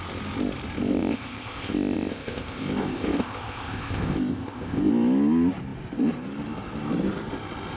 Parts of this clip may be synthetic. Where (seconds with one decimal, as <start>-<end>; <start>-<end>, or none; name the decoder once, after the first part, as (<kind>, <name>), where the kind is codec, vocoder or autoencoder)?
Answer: 0.9-4.9 (codec, ZipCodec)